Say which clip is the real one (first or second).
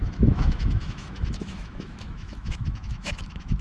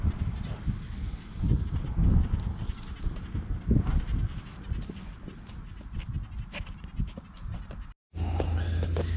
second